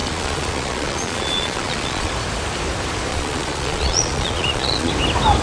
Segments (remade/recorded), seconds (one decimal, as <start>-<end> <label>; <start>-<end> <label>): 0.0-2.1 remade; 2.1-3.1 recorded; 3.1-4.9 remade; 4.9-5.4 recorded

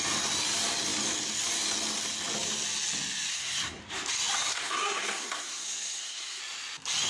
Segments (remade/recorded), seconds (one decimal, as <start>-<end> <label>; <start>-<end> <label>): 0.0-3.3 recorded; 3.3-3.8 remade; 3.8-4.5 recorded; 4.5-6.4 remade; 6.4-7.1 recorded

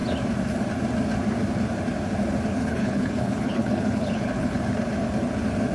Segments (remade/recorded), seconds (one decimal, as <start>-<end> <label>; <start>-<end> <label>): 0.0-2.5 recorded; 2.5-4.6 remade; 4.6-5.7 recorded

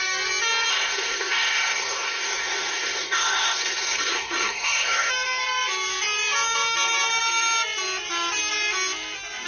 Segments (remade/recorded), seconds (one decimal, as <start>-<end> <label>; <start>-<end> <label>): 0.0-0.7 recorded; 0.7-5.1 remade; 5.1-9.5 recorded

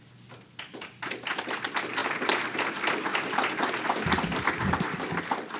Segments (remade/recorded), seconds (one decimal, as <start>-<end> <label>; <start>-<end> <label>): 0.0-5.6 recorded

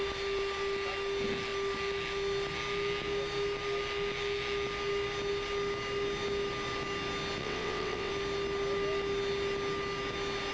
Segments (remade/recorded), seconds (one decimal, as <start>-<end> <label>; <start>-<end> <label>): 0.0-7.4 recorded; 7.4-8.1 remade; 8.1-10.5 recorded